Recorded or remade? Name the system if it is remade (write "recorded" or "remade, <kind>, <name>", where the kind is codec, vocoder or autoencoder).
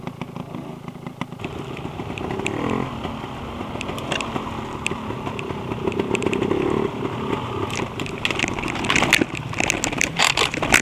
recorded